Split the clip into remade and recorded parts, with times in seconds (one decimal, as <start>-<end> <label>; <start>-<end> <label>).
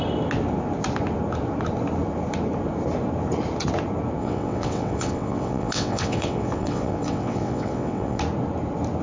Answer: 0.0-4.2 recorded; 4.2-8.2 remade; 8.2-9.0 recorded